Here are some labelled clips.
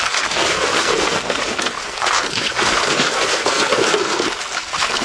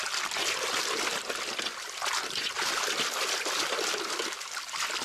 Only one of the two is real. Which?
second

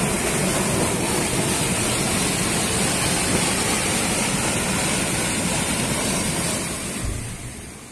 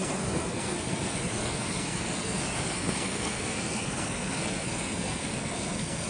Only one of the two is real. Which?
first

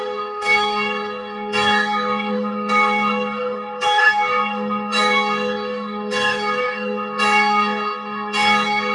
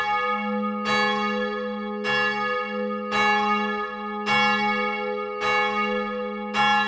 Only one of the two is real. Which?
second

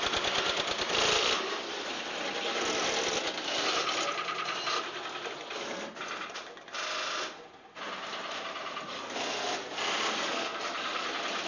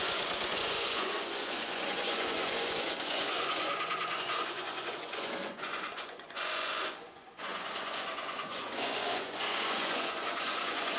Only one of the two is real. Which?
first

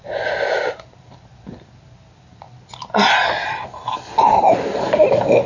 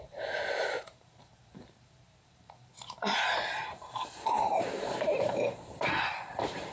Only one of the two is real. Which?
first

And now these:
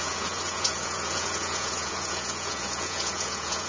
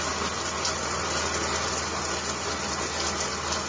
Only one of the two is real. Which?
second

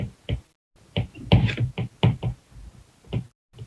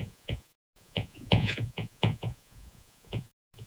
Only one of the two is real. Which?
first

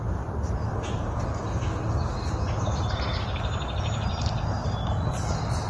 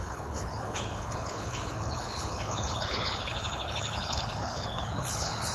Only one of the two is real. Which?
first